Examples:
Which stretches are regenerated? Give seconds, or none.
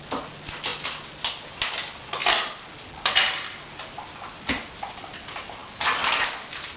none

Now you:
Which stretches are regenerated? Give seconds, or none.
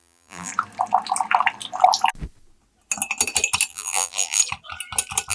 0.0-0.5; 3.7-4.4